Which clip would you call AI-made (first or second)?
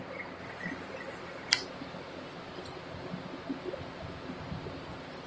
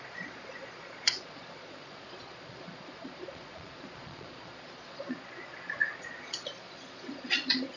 second